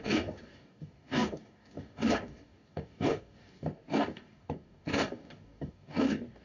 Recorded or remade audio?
remade